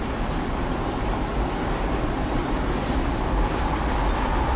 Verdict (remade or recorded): recorded